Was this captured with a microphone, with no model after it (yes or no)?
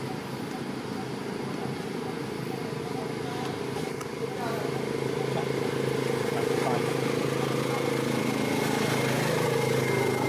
yes